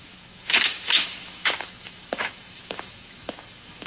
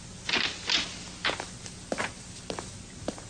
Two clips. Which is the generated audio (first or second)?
first